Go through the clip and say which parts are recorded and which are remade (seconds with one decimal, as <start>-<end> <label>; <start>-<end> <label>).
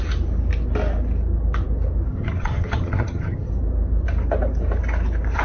0.0-2.1 recorded; 2.1-3.5 remade; 3.5-5.4 recorded